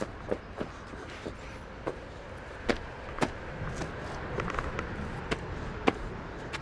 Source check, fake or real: fake